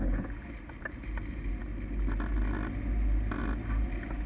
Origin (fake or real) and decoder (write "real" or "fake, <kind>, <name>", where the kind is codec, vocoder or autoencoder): real